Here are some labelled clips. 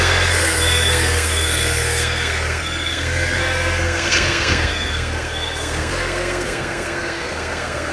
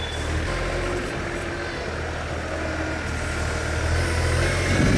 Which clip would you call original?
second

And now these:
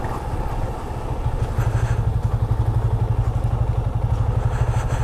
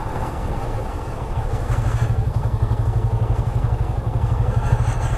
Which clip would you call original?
first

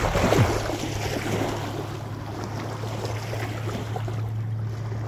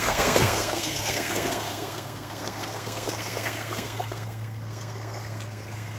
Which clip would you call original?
first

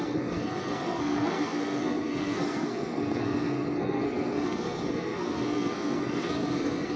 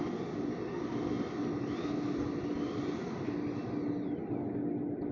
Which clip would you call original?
second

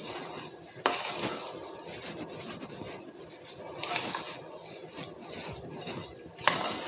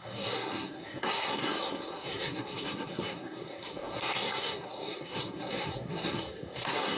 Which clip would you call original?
first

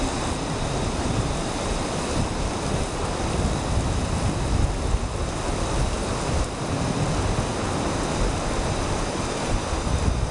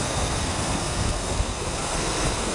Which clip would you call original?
first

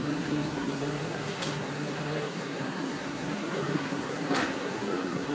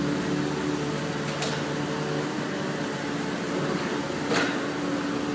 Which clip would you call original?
second